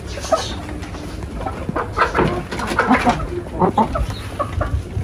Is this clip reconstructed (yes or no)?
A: no